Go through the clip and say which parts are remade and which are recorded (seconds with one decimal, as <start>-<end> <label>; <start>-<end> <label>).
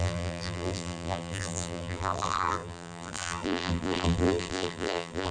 0.0-5.3 remade